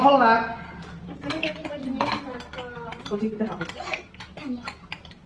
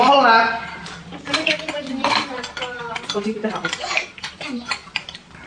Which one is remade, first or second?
second